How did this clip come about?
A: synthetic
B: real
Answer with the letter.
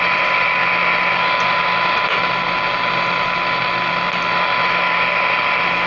B